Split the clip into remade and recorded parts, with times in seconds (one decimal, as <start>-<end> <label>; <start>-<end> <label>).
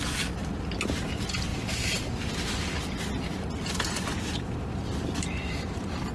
0.0-6.1 recorded